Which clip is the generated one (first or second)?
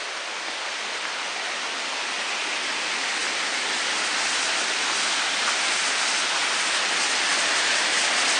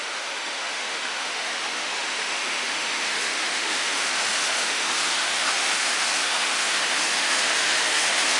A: second